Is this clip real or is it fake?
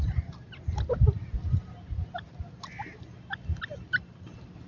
real